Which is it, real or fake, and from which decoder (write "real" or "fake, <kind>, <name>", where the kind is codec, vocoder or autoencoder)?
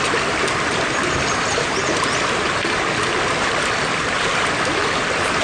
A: real